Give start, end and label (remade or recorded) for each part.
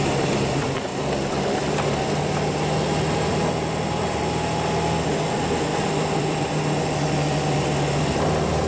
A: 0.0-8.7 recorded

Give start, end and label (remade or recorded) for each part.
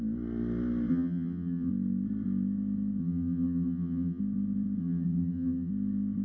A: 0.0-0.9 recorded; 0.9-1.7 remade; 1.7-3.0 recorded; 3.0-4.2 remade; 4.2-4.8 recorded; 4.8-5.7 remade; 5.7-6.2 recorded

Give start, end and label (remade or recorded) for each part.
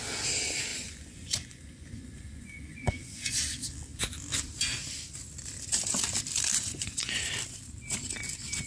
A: 0.0-0.7 recorded; 0.7-3.3 remade; 3.3-6.5 recorded; 6.5-7.2 remade; 7.2-8.7 recorded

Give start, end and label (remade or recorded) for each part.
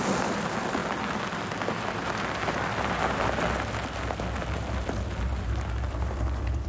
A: 0.0-6.7 recorded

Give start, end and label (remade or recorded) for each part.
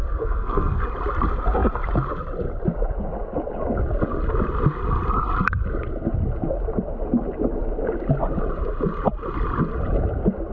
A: 0.0-0.8 remade; 0.8-10.5 recorded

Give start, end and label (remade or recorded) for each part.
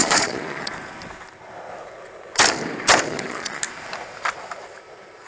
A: 0.0-0.7 remade; 0.7-3.1 recorded; 3.1-3.6 remade; 3.6-5.3 recorded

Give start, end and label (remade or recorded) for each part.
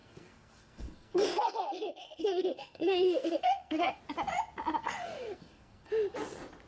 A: 0.0-4.0 remade; 4.0-4.8 recorded; 4.8-5.9 remade; 5.9-6.7 recorded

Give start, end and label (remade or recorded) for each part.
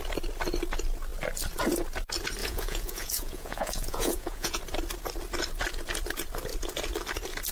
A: 0.0-2.4 recorded; 2.4-4.6 remade; 4.6-7.5 recorded